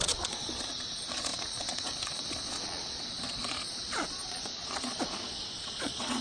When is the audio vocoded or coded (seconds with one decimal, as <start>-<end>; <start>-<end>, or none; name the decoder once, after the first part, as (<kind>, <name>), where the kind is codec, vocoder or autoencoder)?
0.0-6.2 (vocoder, Vocos)